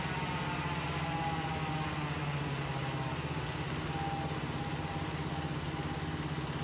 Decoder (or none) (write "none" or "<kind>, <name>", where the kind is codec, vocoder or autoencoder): none